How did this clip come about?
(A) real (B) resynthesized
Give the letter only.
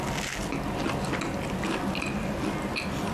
A